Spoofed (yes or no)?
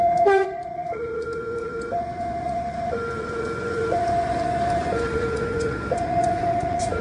yes